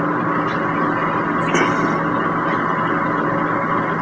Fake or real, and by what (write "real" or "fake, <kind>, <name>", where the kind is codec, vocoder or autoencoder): real